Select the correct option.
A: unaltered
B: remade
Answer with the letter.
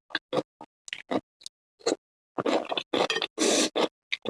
A